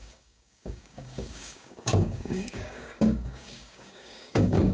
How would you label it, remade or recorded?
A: remade